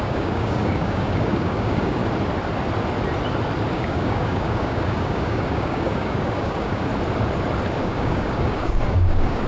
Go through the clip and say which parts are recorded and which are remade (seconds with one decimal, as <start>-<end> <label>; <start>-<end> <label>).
0.0-2.0 remade; 2.0-3.7 recorded; 3.7-6.9 remade; 6.9-7.8 recorded; 7.8-9.5 remade